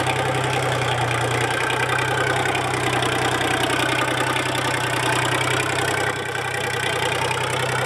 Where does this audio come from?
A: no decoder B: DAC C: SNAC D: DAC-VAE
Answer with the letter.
A